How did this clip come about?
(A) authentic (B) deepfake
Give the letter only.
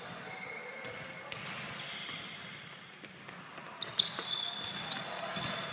A